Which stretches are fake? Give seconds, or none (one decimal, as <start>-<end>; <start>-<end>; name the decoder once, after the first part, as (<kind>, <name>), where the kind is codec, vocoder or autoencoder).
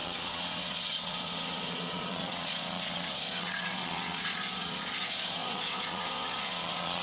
0.0-7.0 (vocoder, Vocos)